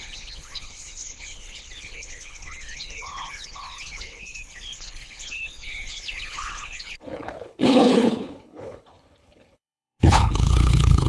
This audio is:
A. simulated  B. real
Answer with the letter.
A